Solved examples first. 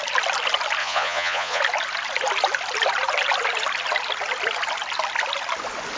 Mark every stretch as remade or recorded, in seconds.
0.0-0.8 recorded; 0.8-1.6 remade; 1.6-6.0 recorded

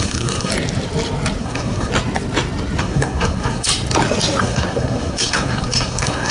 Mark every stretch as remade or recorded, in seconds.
0.0-0.5 remade; 0.5-1.4 recorded; 1.4-1.9 remade; 1.9-2.8 recorded; 2.8-3.7 remade; 3.7-4.4 recorded; 4.4-6.3 remade